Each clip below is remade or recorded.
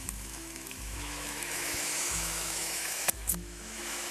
remade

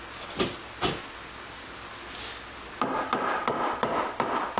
recorded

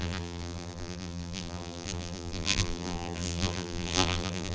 remade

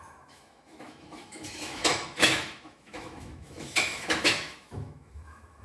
remade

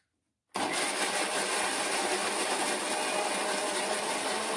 recorded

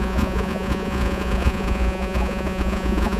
remade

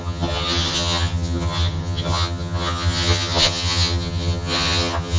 remade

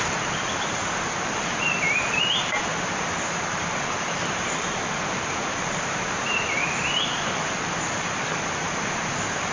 remade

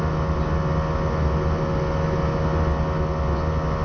recorded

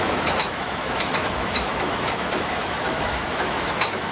remade